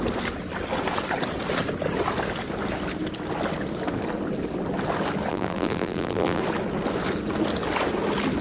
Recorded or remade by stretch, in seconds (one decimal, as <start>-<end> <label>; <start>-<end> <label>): 0.0-5.3 recorded; 5.3-6.4 remade; 6.4-8.4 recorded